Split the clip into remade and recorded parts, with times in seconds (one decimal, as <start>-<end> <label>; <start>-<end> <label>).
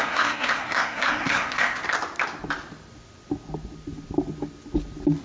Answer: 0.0-1.8 remade; 1.8-5.2 recorded